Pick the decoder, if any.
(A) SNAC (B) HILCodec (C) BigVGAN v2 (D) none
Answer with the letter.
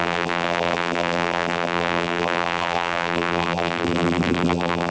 C